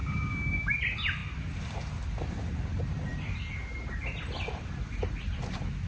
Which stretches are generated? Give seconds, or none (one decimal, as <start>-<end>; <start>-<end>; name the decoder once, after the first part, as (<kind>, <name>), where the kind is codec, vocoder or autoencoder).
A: 0.0-0.7 (codec, DAC)